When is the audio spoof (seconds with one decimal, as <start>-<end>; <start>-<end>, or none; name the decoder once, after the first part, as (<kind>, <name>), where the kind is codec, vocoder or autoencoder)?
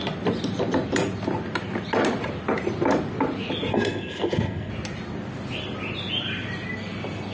3.7-4.7 (codec, SNAC)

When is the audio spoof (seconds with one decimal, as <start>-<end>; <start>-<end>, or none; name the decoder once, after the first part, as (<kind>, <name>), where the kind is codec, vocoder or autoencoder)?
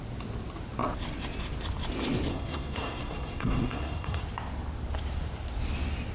2.3-4.2 (codec, SNAC)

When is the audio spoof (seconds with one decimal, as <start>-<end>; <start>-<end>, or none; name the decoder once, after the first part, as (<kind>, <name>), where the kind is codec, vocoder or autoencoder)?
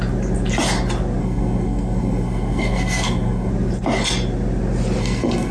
1.2-3.5 (codec, SNAC); 5.0-5.5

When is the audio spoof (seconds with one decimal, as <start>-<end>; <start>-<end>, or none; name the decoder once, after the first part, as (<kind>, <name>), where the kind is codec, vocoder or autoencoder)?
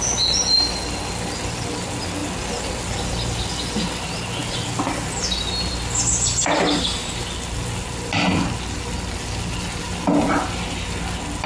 none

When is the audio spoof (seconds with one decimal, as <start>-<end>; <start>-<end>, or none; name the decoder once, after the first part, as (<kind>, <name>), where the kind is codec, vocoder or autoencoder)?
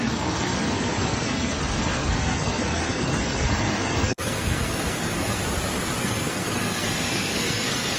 0.0-5.4 (codec, SNAC); 6.0-8.0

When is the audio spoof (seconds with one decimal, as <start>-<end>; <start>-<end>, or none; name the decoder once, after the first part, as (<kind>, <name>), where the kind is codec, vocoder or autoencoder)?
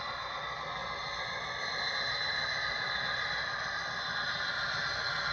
none